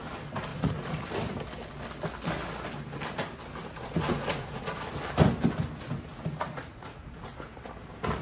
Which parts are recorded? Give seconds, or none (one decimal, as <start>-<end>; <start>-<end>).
0.0-0.5; 1.0-3.6; 4.7-6.1; 7.6-8.2